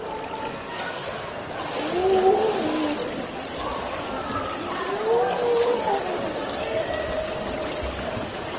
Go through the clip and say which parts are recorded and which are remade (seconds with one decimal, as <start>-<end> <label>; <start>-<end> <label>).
0.0-0.5 recorded; 0.5-1.5 remade; 1.5-8.6 recorded